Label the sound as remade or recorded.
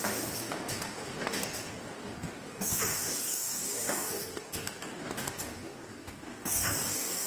remade